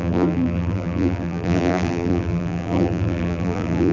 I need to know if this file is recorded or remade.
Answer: remade